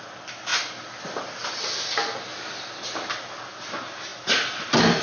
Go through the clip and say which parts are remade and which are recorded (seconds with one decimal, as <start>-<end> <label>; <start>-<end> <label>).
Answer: 0.0-5.0 recorded